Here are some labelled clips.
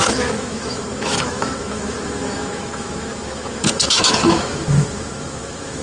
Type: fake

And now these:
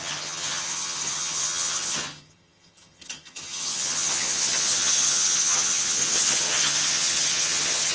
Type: fake